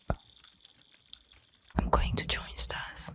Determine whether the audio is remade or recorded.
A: recorded